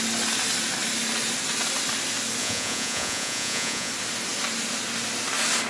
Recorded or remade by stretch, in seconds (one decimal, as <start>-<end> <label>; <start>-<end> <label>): 0.0-2.4 recorded; 2.4-3.9 remade; 3.9-5.7 recorded